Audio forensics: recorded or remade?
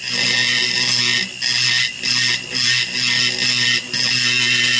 recorded